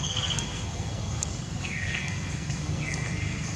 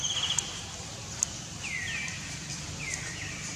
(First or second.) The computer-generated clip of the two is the first